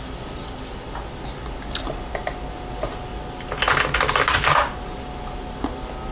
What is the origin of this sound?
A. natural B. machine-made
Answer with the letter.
A